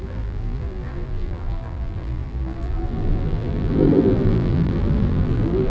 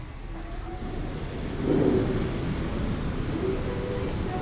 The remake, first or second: first